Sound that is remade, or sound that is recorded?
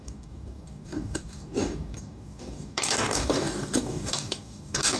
remade